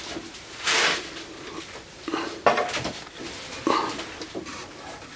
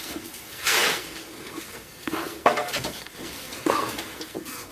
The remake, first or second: second